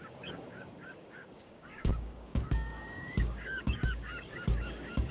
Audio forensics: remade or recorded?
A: remade